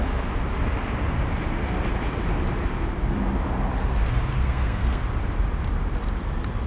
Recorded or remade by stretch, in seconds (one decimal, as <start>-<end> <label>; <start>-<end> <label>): 0.0-4.4 recorded; 4.4-5.0 remade; 5.0-6.7 recorded